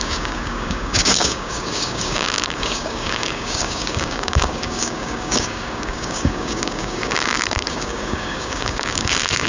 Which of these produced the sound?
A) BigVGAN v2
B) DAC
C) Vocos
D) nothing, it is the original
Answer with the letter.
B